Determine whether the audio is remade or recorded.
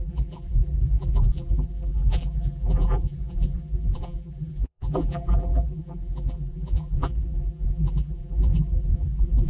remade